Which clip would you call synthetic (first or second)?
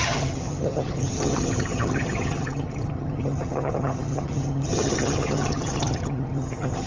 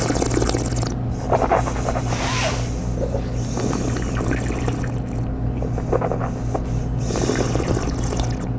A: first